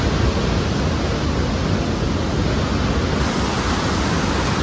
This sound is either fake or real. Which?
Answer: real